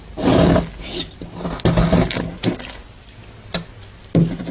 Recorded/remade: recorded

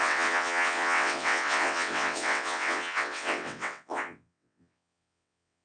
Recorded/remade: remade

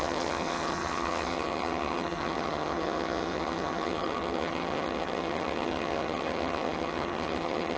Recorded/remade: remade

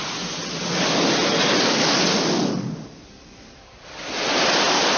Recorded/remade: recorded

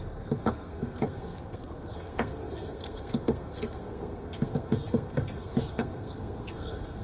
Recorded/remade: remade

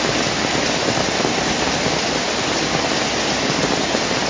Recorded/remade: recorded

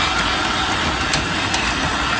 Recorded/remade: recorded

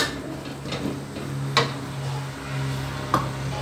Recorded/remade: recorded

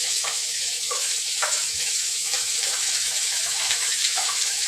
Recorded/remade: remade